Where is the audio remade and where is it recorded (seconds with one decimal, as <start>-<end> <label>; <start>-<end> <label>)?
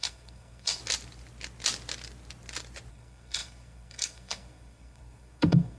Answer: 0.0-0.8 remade; 0.8-2.9 recorded; 2.9-5.8 remade